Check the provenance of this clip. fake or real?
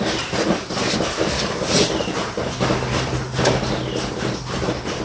real